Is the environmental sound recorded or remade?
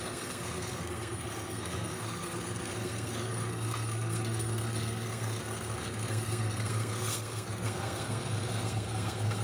remade